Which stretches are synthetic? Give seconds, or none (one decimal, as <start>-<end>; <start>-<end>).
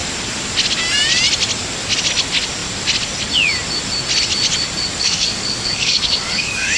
4.9-6.8